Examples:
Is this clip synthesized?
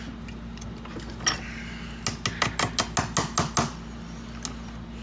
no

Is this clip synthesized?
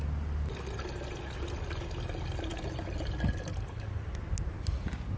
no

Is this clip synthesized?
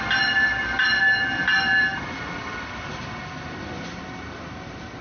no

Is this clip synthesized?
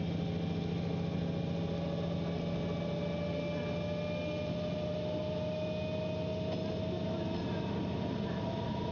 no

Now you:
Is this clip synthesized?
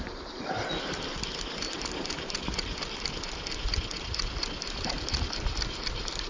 no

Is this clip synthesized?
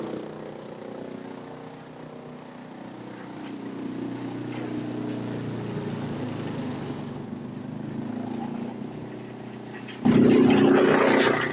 no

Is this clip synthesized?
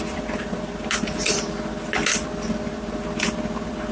no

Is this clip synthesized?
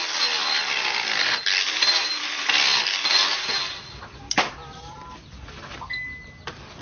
no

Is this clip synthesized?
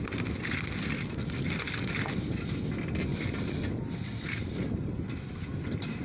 no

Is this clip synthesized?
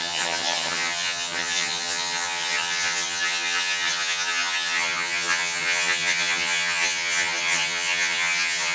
yes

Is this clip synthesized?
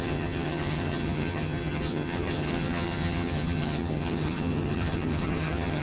yes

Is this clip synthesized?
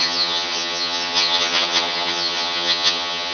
yes